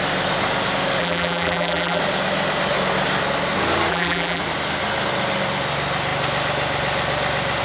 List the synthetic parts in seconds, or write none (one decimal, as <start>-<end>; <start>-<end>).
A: 1.0-2.0; 3.9-4.4